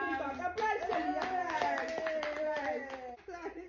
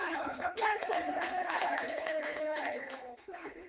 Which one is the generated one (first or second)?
second